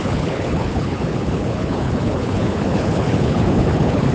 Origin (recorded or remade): remade